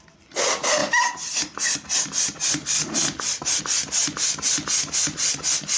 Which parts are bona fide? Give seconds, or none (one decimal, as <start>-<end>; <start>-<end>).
0.0-5.8